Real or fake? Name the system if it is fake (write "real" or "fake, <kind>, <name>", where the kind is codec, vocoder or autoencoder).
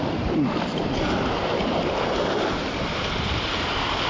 real